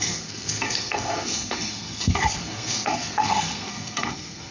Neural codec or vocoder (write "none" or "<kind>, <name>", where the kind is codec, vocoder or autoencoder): codec, SNAC